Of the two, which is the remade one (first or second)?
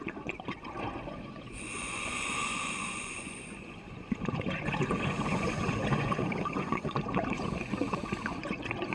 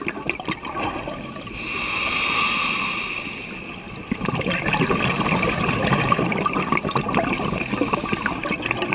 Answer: first